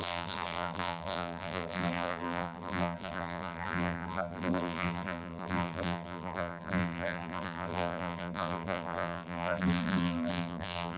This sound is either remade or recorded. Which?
remade